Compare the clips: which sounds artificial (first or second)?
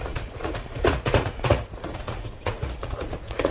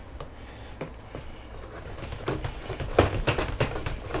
first